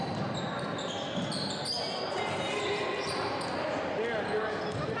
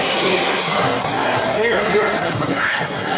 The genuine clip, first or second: first